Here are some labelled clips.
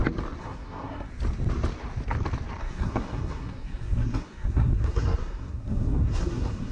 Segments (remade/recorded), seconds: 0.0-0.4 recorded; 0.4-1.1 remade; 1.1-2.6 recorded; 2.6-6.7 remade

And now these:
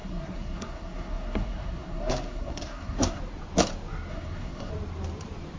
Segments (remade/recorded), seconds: 0.0-3.2 remade; 3.2-4.1 recorded; 4.1-4.7 remade; 4.7-5.6 recorded